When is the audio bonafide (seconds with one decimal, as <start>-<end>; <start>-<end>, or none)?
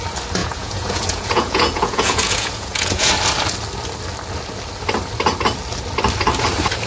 0.0-0.4; 3.1-6.9